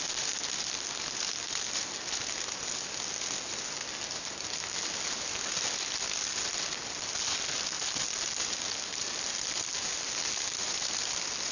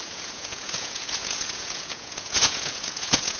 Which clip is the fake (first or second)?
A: second